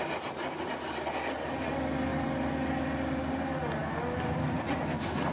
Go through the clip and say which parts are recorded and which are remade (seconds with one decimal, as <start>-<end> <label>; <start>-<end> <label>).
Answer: 0.0-5.3 recorded